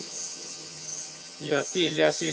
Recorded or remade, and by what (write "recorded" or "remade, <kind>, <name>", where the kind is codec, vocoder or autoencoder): remade, vocoder, HiFi-GAN